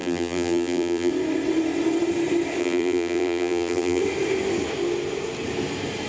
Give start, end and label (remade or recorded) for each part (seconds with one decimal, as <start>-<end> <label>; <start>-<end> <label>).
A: 0.0-1.1 remade; 1.1-2.6 recorded; 2.6-4.0 remade; 4.0-6.1 recorded